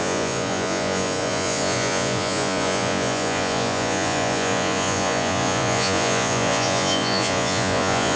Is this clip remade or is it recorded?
remade